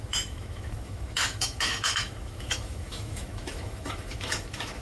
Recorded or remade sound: remade